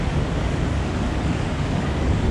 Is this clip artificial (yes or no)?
yes